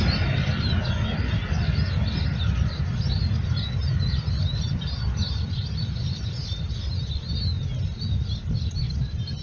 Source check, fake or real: real